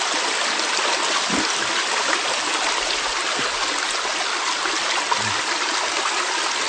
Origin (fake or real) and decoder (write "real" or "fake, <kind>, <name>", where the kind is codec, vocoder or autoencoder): real